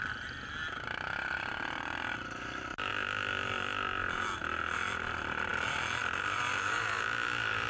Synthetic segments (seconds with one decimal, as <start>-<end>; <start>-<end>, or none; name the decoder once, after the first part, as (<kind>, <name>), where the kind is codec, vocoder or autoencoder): none